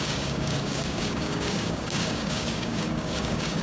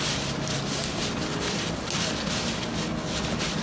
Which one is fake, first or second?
first